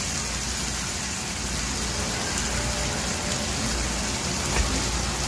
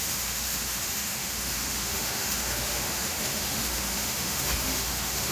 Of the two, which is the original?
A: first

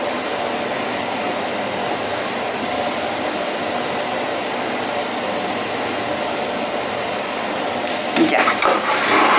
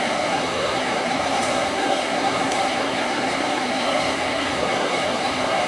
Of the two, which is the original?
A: first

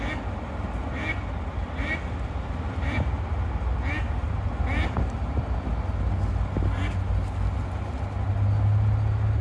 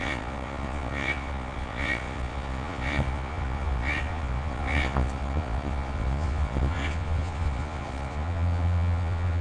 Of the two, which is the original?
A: first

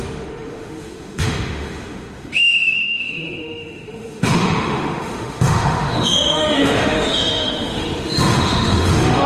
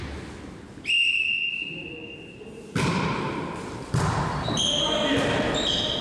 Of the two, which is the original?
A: second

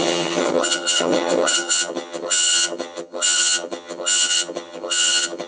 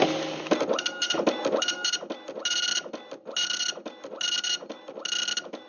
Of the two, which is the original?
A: second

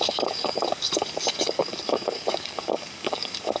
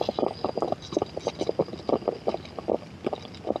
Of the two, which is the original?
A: second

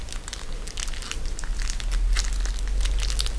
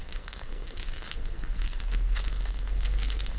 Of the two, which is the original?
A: first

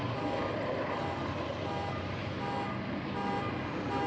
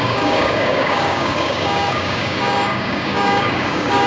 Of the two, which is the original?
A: first